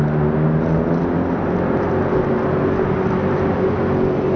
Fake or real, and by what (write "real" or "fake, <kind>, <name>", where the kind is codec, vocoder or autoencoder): real